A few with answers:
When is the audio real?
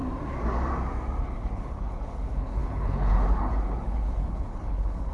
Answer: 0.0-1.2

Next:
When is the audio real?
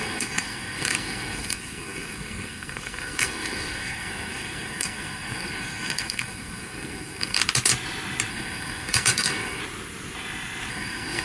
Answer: 7.4-8.3; 9.6-10.7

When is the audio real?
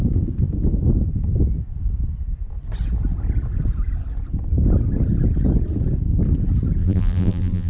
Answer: 0.0-6.8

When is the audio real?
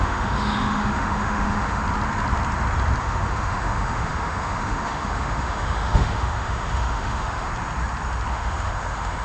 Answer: 1.8-3.0; 7.5-8.3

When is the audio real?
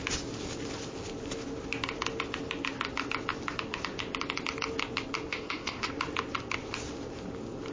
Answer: 0.0-5.3; 5.9-7.7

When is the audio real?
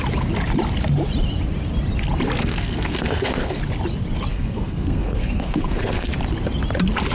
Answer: 0.0-2.4; 3.6-4.3; 6.1-7.1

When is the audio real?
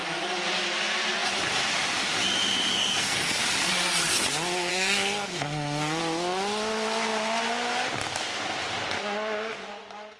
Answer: 0.0-2.7; 3.4-4.7; 6.0-10.2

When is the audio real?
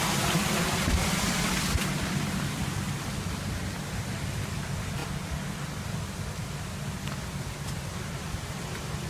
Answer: 0.0-9.1